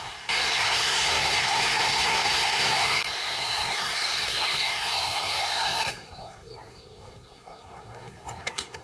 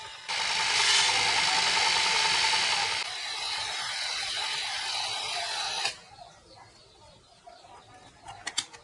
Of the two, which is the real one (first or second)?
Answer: second